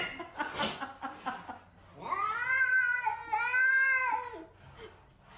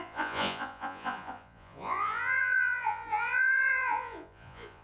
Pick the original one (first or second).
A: first